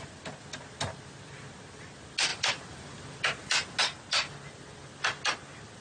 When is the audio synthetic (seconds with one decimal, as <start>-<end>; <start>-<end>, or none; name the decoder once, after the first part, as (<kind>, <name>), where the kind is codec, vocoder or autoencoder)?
none